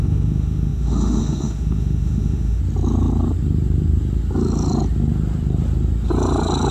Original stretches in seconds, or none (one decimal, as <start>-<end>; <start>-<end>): 2.6-6.7